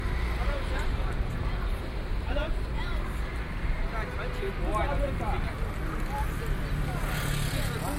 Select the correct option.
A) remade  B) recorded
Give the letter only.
B